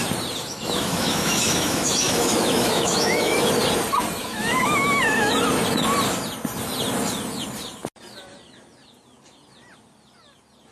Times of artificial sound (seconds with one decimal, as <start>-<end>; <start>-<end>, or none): 0.4-3.5; 4.2-5.3